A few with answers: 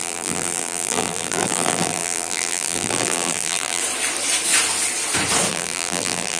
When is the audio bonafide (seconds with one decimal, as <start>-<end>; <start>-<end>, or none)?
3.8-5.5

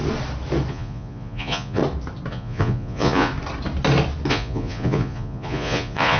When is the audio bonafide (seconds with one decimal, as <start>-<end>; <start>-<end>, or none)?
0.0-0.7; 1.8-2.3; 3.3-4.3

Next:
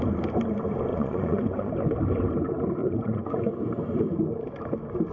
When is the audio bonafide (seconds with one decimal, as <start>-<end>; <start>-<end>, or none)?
0.0-0.9; 1.7-2.8; 3.6-5.1